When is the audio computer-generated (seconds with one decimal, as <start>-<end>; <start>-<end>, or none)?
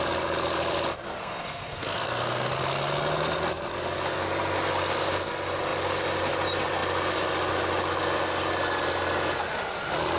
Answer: 1.2-2.5